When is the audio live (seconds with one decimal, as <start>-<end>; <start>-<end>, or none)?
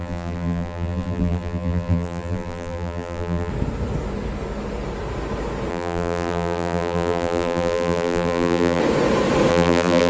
3.5-5.7; 8.8-9.5